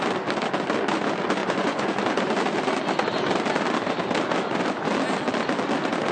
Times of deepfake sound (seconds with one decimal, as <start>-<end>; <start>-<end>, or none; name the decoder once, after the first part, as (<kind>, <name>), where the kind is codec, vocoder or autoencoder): 1.4-2.0 (vocoder, Vocos)